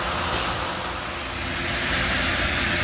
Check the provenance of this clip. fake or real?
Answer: real